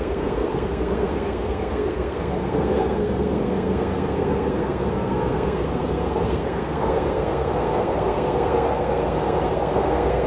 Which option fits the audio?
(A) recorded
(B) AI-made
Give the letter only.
B